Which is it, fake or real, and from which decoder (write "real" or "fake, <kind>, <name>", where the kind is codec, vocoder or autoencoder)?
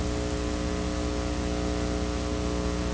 real